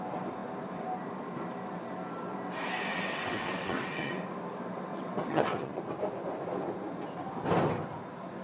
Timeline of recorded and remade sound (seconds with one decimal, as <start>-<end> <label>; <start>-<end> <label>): 0.0-2.9 recorded; 2.9-4.2 remade; 4.2-4.9 recorded; 4.9-5.8 remade; 5.8-8.4 recorded